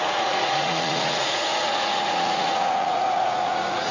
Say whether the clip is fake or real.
fake